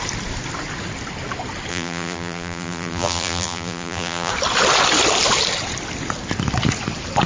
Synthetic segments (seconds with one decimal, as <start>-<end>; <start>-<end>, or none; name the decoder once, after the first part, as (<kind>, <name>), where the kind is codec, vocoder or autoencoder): 1.7-4.3 (vocoder, BigVGAN v2)